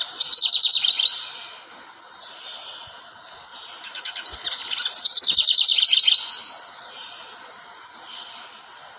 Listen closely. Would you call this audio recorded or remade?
recorded